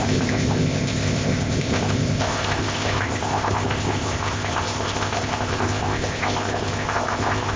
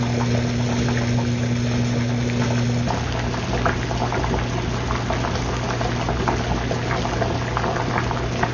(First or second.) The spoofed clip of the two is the first